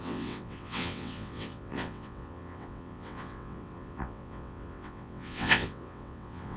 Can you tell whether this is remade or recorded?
remade